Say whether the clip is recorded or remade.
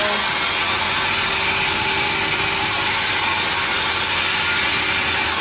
recorded